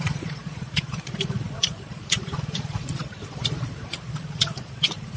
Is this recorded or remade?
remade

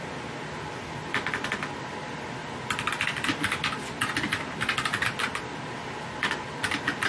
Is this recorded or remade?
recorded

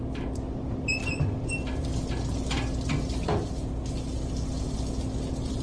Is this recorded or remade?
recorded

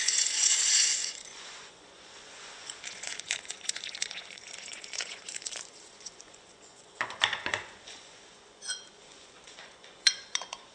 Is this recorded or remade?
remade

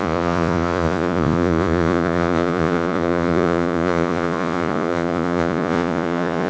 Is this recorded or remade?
remade